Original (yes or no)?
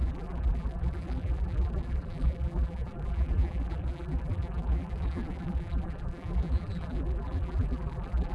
no